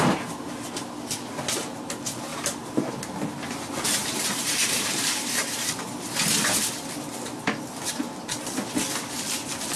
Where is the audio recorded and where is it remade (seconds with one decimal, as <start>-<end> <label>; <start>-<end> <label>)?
0.0-2.3 recorded; 2.3-2.9 remade; 2.9-4.0 recorded; 4.0-5.2 remade; 5.2-9.8 recorded